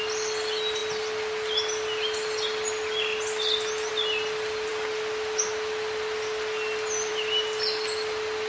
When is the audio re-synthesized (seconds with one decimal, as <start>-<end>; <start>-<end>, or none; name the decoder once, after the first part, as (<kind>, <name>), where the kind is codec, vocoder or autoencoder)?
none